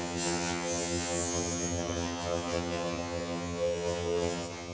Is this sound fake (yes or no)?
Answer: yes